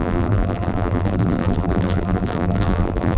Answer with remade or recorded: remade